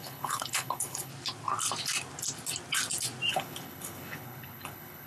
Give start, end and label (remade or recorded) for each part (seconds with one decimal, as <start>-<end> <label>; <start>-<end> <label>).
0.0-1.1 remade; 1.1-3.3 recorded; 3.3-5.1 remade

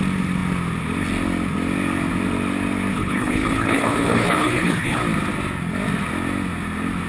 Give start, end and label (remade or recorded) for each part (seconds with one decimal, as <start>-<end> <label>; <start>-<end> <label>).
0.0-2.9 recorded; 2.9-5.0 remade; 5.0-7.1 recorded

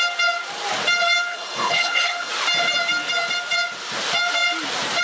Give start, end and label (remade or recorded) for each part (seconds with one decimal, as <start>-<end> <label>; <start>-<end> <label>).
0.0-1.3 recorded; 1.3-2.3 remade; 2.3-5.0 recorded

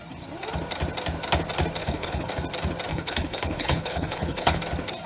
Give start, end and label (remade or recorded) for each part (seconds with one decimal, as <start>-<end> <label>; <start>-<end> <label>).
0.0-1.8 recorded; 1.8-2.3 remade; 2.3-2.9 recorded; 2.9-4.6 remade; 4.6-5.1 recorded

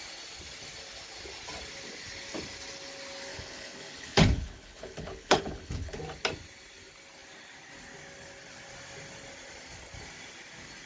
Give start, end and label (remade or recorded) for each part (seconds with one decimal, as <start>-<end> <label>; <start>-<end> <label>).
0.0-3.3 recorded; 3.3-6.0 remade; 6.0-10.9 recorded

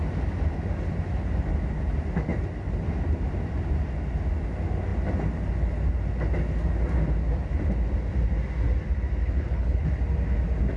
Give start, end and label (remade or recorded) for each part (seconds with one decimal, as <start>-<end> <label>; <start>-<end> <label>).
0.0-9.2 recorded; 9.2-9.9 remade; 9.9-10.8 recorded